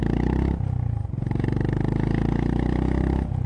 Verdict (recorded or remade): recorded